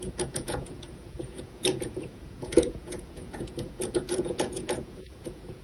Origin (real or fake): fake